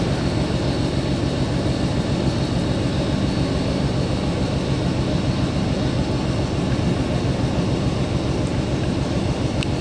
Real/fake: real